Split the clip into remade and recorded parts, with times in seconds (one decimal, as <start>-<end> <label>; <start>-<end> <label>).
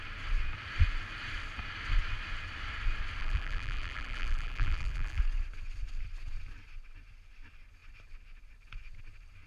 0.0-3.2 recorded; 3.2-5.2 remade; 5.2-9.5 recorded